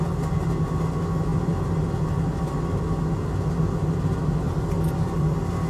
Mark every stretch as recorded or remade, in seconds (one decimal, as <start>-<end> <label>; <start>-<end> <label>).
0.0-5.7 recorded